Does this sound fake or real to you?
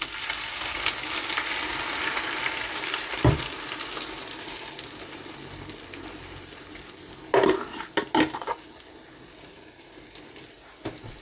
real